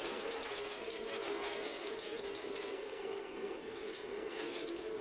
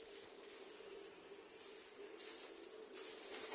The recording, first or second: second